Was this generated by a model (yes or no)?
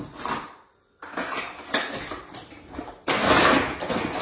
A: no